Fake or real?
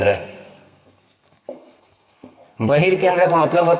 fake